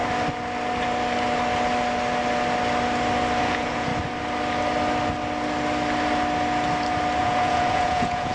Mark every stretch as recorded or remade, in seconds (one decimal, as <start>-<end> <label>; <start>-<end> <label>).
0.0-3.4 recorded; 3.4-3.9 remade; 3.9-7.2 recorded; 7.2-8.3 remade